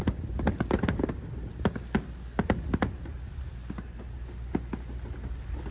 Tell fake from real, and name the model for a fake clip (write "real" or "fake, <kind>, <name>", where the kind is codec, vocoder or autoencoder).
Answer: real